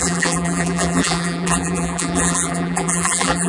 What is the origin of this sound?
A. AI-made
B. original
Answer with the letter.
A